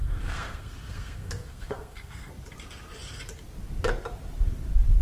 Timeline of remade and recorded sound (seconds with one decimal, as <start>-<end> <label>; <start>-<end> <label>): 0.0-2.3 remade; 2.3-5.0 recorded